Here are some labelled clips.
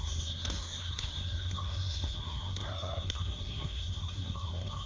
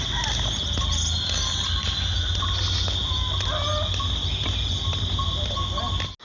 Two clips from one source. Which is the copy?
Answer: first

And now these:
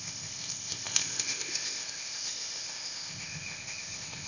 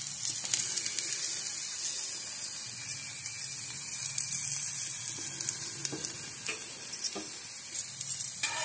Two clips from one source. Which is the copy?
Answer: first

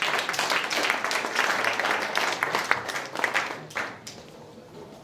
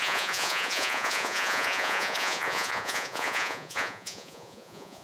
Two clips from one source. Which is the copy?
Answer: second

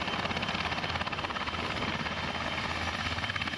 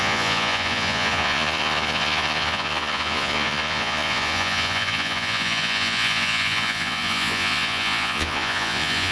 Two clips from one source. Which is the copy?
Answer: second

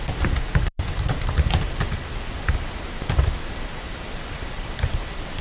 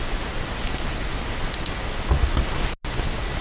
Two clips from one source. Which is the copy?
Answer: first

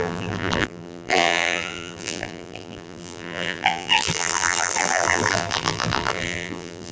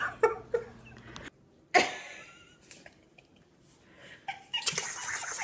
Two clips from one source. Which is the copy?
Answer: first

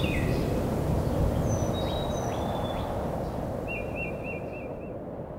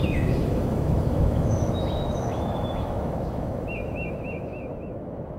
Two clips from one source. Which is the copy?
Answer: second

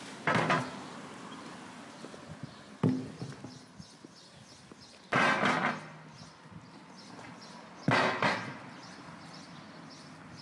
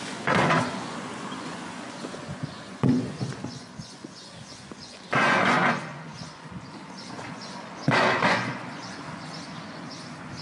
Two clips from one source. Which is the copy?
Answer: second